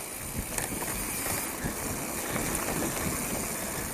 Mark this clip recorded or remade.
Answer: recorded